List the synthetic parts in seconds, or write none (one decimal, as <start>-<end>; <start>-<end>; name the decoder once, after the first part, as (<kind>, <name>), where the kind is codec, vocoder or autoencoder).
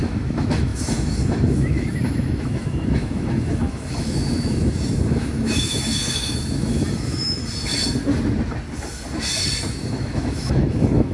0.0-7.4 (autoencoder, DAC-VAE); 9.7-11.1